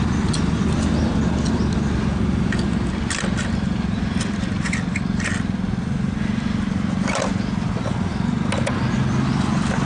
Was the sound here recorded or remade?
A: recorded